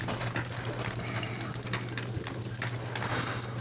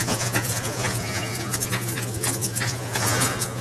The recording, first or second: first